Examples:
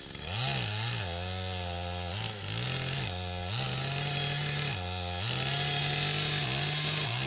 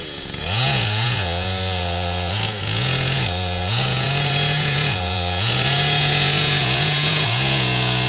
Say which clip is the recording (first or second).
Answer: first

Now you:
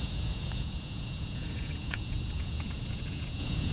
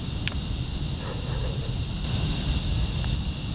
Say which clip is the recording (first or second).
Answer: second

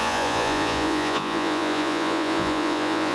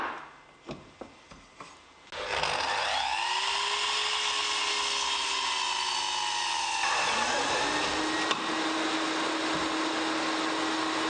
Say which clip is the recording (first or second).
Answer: second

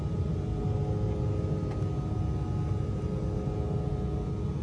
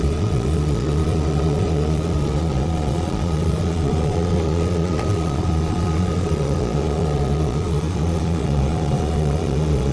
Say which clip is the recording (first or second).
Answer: first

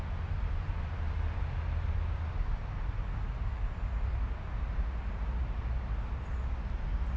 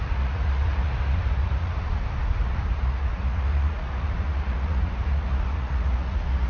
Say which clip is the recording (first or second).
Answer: first